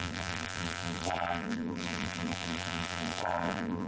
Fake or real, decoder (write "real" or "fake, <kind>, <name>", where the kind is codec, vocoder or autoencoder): fake, vocoder, BigVGAN v2